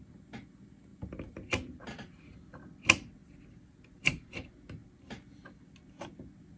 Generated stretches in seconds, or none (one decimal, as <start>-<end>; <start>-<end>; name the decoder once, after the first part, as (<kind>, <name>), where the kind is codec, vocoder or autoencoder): 3.2-4.3 (vocoder, BigVGAN v2)